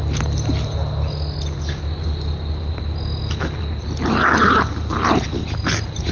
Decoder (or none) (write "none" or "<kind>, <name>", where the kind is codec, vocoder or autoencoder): none